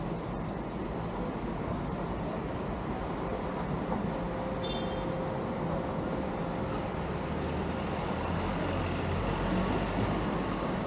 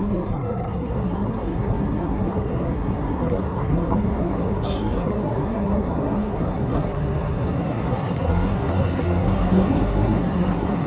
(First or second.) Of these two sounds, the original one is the first